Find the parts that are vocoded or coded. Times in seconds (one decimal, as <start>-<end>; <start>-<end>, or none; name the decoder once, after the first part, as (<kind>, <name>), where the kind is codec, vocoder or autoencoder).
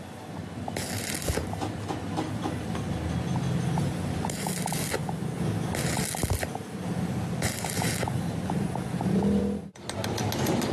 none